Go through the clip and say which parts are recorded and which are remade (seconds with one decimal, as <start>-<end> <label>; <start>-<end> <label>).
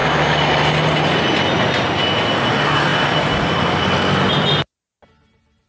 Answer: 0.0-5.7 recorded